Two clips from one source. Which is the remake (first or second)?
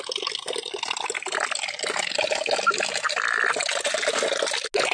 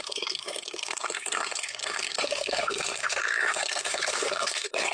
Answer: second